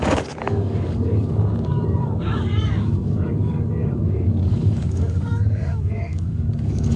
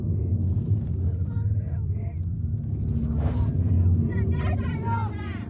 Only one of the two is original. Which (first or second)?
second